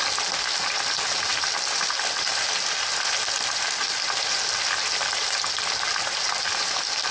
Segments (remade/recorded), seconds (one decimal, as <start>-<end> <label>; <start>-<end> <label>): 0.0-7.1 recorded